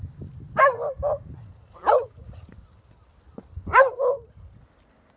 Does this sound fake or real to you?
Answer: real